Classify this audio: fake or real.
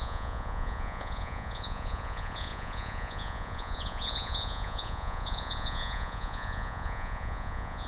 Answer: fake